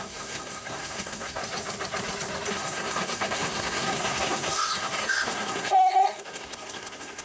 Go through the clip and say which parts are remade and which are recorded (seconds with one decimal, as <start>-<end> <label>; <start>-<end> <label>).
0.0-1.4 remade; 1.4-2.5 recorded; 2.5-7.2 remade